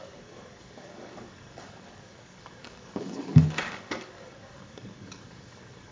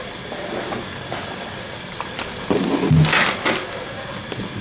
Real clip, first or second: second